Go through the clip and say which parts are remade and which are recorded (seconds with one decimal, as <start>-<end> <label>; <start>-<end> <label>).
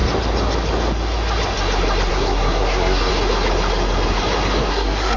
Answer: 0.0-2.1 recorded; 2.1-3.1 remade; 3.1-4.7 recorded; 4.7-5.2 remade